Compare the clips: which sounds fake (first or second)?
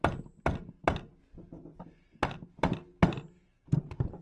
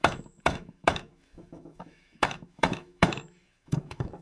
second